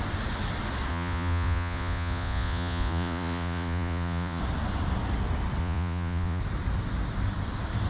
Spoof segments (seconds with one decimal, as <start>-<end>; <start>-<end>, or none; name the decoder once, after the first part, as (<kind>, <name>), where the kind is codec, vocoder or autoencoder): 0.9-4.4 (vocoder, Vocos); 5.6-6.4